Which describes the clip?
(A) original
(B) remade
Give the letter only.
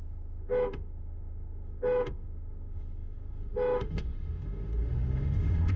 B